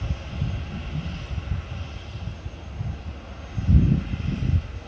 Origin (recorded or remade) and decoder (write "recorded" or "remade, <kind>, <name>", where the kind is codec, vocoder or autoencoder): recorded